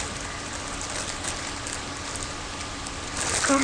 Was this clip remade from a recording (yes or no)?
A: no